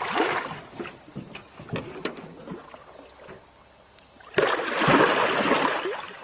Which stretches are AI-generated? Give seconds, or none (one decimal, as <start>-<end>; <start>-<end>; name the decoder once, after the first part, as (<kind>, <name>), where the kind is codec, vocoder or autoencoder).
none